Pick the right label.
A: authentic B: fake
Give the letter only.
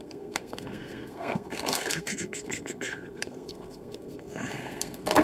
B